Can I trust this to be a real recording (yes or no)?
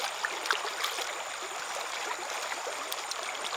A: yes